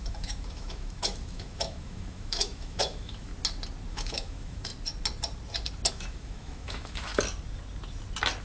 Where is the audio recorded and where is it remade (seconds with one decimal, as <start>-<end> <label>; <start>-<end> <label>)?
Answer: 0.0-3.3 remade; 3.3-3.9 recorded; 3.9-4.7 remade; 4.7-5.9 recorded; 5.9-7.1 remade; 7.1-8.4 recorded